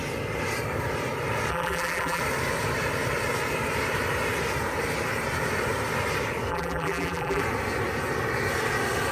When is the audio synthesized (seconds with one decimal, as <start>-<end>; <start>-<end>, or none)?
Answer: 1.5-2.2; 6.5-7.4